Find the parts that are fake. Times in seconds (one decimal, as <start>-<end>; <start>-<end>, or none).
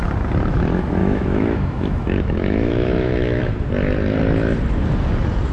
1.0-3.4